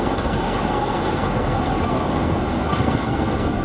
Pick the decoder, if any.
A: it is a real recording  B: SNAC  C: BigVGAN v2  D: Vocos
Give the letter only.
B